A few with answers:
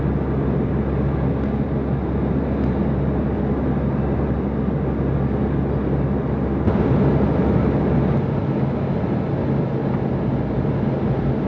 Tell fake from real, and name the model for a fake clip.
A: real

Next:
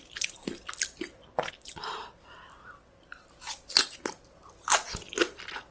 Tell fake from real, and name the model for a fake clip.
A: real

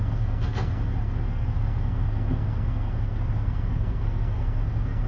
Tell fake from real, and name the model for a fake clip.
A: fake, codec, SNAC